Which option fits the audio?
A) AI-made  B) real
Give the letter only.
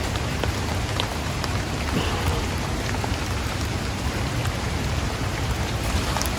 A